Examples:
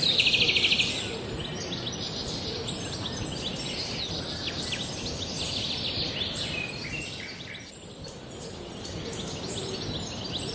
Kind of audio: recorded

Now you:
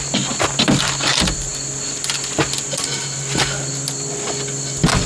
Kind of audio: recorded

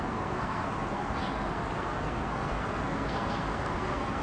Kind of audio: remade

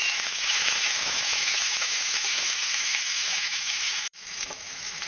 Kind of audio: remade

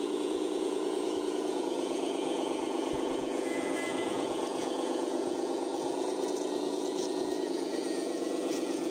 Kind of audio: remade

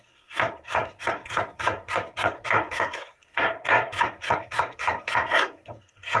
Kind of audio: remade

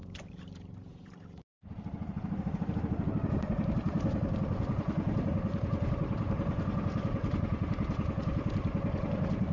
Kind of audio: remade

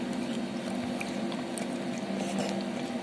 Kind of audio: recorded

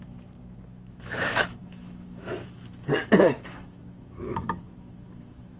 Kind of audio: remade